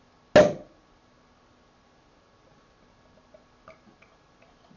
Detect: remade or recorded recorded